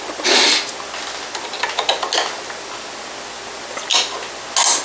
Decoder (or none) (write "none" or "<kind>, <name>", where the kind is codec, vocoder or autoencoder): none